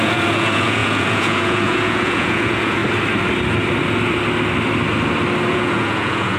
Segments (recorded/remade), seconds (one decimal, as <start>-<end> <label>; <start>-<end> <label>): 0.0-2.8 remade; 2.8-5.5 recorded; 5.5-6.4 remade